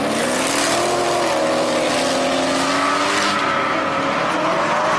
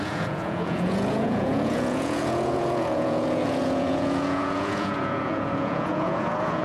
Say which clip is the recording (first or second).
first